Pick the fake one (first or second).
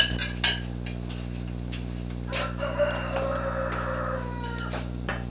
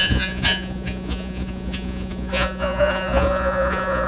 second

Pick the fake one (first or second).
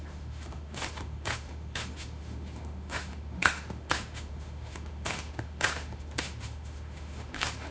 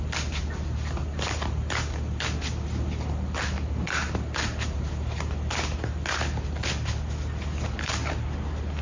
first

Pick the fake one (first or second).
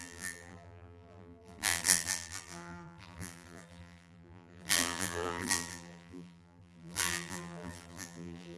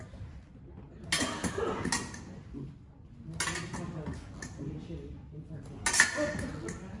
first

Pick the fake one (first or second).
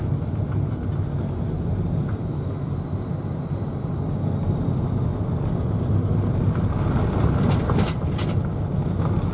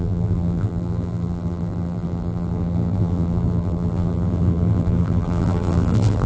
second